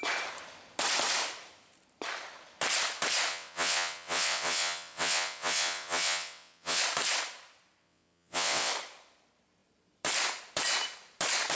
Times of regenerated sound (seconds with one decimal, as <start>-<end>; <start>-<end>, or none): 3.3-6.8; 7.8-8.7